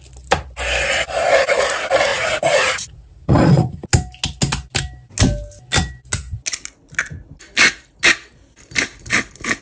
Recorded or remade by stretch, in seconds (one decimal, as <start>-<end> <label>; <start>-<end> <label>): 0.0-2.1 recorded; 2.1-3.7 remade; 3.7-9.6 recorded